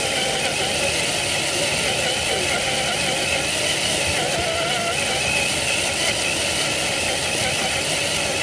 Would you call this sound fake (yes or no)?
no